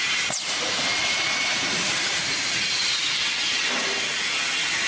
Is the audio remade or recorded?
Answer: recorded